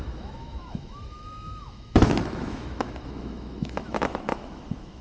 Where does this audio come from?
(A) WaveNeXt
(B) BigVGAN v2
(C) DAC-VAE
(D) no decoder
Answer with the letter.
C